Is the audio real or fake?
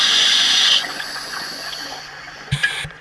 fake